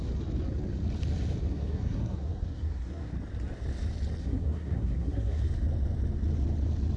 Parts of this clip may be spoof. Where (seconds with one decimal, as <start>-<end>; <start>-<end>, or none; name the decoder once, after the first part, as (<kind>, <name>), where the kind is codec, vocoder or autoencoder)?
1.5-3.1 (codec, SNAC); 4.2-5.4